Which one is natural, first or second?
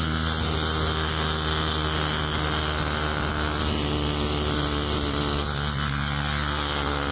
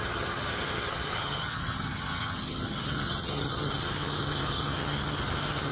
first